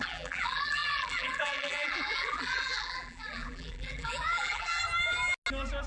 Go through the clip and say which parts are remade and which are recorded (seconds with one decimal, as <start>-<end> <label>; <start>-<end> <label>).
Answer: 0.0-4.8 remade; 4.8-5.9 recorded